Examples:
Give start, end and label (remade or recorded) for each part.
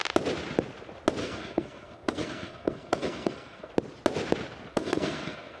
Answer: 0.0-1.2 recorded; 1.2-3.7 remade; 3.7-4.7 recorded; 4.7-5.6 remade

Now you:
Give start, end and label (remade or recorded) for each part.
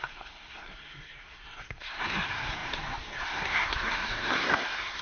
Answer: 0.0-5.0 remade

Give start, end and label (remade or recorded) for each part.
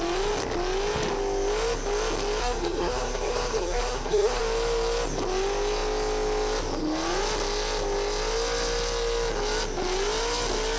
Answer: 0.0-2.4 recorded; 2.4-4.4 remade; 4.4-10.8 recorded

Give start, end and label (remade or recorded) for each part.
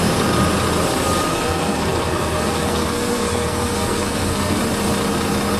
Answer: 0.0-1.3 recorded; 1.3-4.6 remade; 4.6-5.6 recorded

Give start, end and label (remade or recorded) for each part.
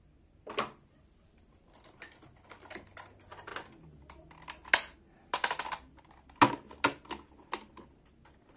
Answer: 0.0-8.6 recorded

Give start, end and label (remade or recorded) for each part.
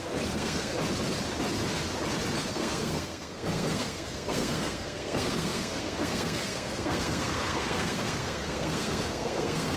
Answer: 0.0-0.7 remade; 0.7-2.5 recorded; 2.5-9.8 remade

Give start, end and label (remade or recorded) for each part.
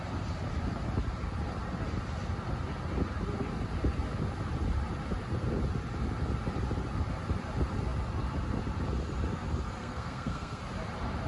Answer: 0.0-9.8 recorded; 9.8-10.6 remade; 10.6-11.3 recorded